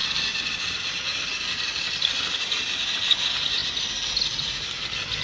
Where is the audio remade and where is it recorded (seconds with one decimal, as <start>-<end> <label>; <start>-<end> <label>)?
0.0-5.2 recorded